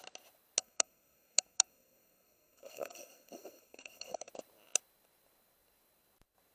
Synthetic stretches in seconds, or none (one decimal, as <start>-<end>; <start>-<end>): 0.6-4.3